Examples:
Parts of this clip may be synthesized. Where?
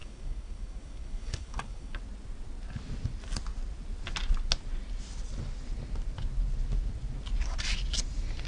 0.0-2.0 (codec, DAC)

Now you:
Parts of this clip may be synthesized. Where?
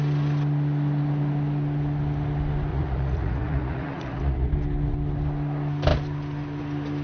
2.7-4.5 (vocoder, Vocos)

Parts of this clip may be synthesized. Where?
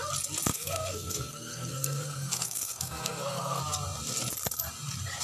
0.5-3.6 (codec, SNAC)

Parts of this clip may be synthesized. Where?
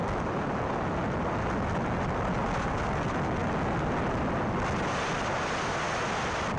none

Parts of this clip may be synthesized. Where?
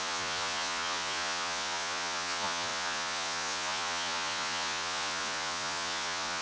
0.0-6.4 (vocoder, Vocos)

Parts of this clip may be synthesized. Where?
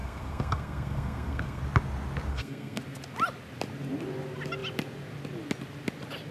0.0-1.6 (codec, SNAC); 2.3-2.8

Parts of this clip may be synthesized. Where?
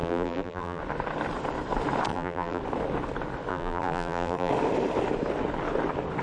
0.0-0.8 (vocoder, BigVGAN v2); 2.1-2.6; 3.5-4.5